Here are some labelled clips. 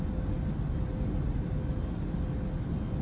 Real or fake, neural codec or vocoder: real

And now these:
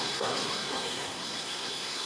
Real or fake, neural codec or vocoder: fake, codec, SNAC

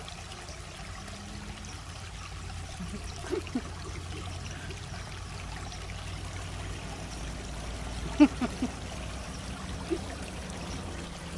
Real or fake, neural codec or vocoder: real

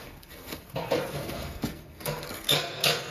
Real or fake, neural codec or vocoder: fake, codec, SNAC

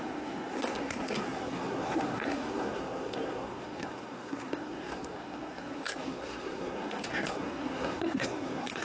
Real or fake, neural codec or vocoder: fake, codec, SNAC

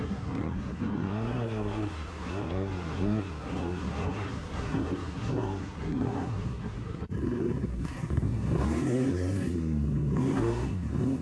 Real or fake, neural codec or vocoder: fake, codec, SNAC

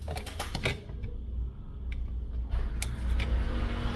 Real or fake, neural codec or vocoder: real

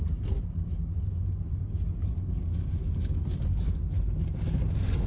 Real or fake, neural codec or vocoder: real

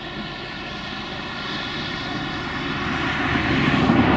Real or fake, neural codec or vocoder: real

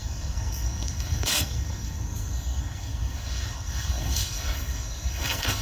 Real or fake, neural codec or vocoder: fake, codec, SNAC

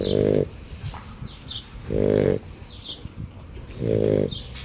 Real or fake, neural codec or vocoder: real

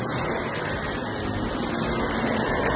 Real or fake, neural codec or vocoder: real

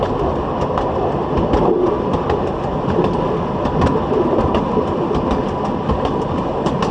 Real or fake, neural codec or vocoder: real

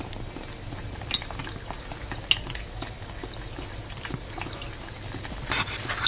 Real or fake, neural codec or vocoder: real